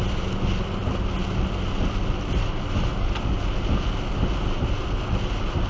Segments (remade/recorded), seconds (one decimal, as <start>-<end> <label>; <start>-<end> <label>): 0.0-5.7 recorded